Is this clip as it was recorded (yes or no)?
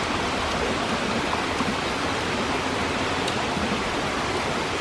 yes